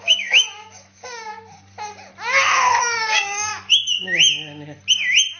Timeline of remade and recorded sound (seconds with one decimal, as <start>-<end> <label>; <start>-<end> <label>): 0.0-1.3 remade; 1.3-2.8 recorded; 2.8-3.5 remade; 3.5-5.4 recorded

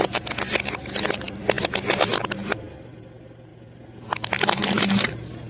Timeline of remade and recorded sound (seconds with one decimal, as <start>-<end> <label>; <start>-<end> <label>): 0.0-5.5 recorded

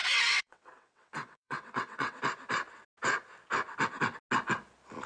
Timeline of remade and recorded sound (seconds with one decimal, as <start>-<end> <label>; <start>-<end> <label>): 0.0-2.2 remade; 2.2-5.1 recorded

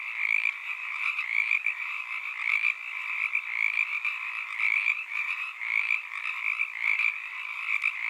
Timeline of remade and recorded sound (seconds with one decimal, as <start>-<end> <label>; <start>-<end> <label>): 0.0-0.6 recorded; 0.6-2.0 remade; 2.0-4.8 recorded; 4.8-5.6 remade; 5.6-8.1 recorded

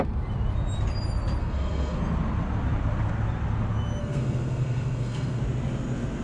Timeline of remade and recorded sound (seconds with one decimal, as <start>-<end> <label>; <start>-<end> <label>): 0.0-1.4 recorded; 1.4-2.0 remade; 2.0-4.0 recorded; 4.0-5.4 remade; 5.4-6.2 recorded

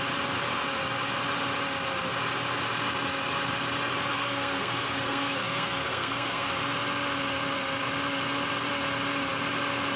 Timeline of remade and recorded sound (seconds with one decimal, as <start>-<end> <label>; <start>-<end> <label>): 0.0-4.1 recorded; 4.1-6.5 remade; 6.5-10.0 recorded